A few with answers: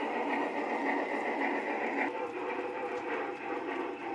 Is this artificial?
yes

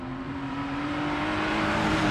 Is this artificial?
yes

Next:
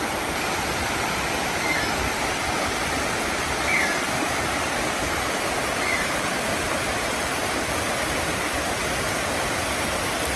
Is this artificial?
no